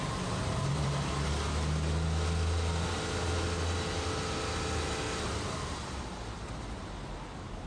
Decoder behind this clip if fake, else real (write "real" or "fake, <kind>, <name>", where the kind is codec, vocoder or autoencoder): real